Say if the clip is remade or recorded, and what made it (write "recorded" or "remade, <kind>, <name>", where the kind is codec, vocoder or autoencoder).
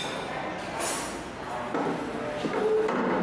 recorded